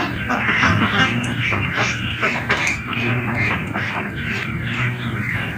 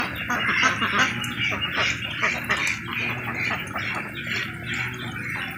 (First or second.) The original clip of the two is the second